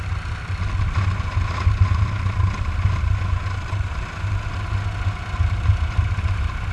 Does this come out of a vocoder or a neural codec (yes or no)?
no